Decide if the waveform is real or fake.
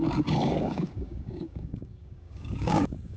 fake